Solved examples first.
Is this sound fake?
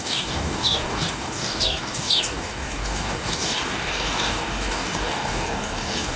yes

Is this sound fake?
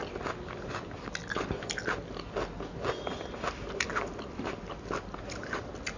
no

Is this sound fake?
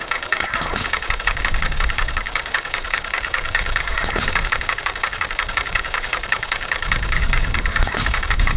yes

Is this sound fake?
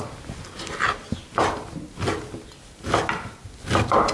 no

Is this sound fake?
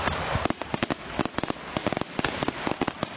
no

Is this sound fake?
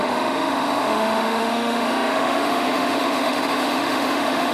yes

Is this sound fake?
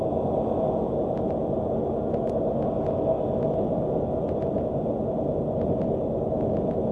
no